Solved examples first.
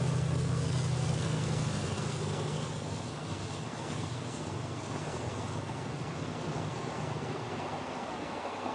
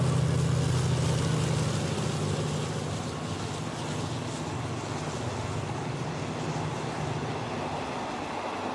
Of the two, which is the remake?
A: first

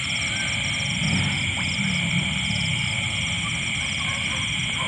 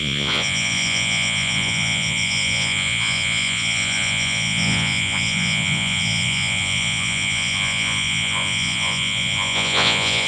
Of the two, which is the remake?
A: second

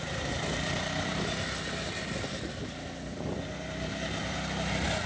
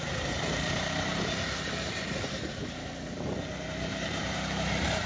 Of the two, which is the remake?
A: second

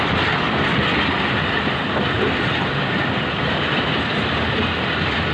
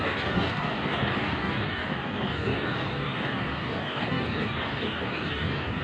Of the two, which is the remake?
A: second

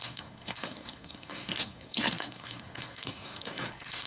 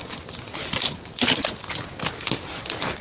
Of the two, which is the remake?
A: first